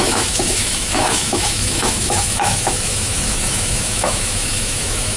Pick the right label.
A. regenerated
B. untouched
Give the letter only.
A